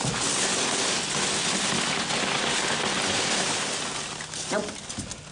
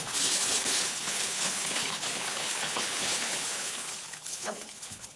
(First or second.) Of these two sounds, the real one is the first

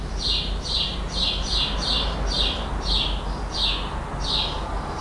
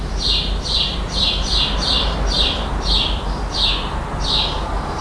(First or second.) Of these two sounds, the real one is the first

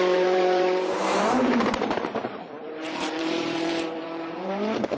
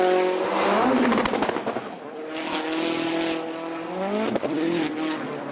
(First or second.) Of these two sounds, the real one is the second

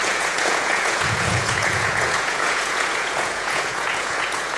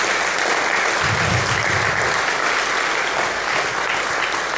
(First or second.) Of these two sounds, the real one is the second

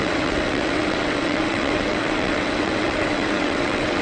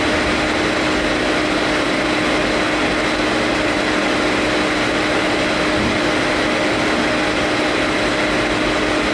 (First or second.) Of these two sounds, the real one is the second